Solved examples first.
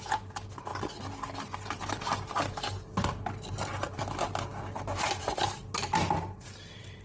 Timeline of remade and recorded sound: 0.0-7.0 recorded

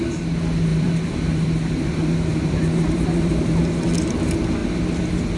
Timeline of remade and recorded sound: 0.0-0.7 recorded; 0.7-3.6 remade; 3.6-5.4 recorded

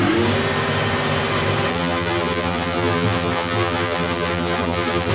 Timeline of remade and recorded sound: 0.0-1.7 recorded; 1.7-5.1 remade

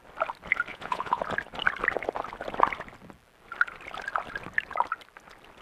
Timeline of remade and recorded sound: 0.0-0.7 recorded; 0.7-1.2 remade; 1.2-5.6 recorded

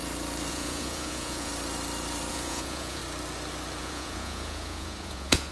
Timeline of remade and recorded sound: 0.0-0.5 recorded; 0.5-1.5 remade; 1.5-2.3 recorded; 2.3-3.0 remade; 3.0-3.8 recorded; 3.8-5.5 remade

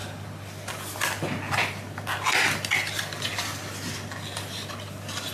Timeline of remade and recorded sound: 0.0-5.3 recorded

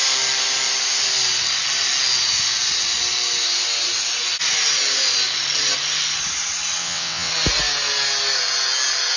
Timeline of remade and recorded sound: 0.0-6.8 recorded; 6.8-7.3 remade; 7.3-9.2 recorded

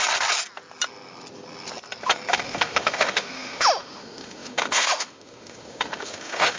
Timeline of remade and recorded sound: 0.0-2.3 recorded; 2.3-6.6 remade